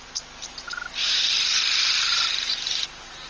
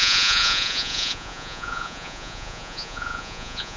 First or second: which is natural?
first